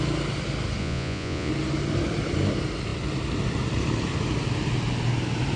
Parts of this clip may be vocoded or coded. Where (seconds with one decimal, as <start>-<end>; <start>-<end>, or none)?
0.8-1.5